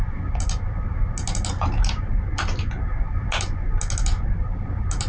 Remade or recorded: recorded